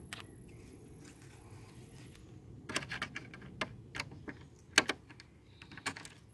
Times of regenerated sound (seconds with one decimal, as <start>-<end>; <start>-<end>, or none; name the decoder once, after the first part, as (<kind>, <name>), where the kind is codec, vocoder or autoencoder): 0.0-2.2 (vocoder, WaveNeXt)